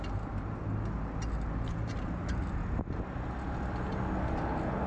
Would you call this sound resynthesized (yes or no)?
no